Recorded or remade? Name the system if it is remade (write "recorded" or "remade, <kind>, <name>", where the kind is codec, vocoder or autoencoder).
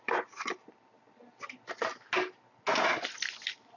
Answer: recorded